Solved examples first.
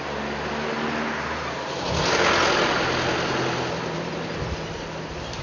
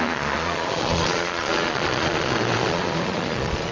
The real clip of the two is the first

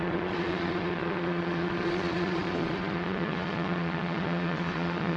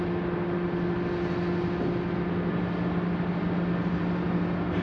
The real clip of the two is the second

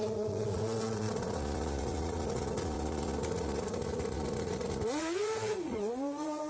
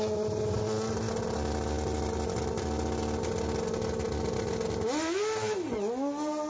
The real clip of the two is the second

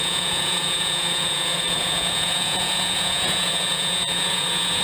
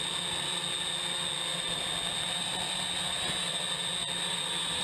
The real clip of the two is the second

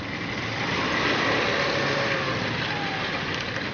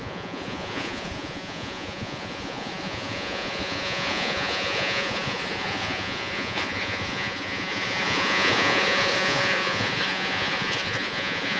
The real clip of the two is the first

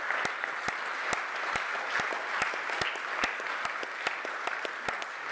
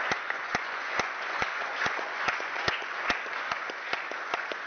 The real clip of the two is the first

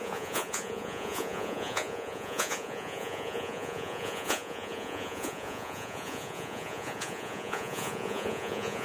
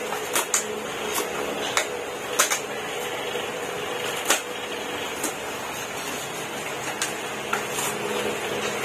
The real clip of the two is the second